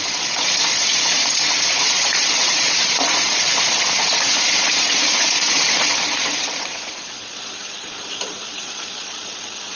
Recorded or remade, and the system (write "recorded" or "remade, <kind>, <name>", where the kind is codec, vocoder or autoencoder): remade, vocoder, Vocos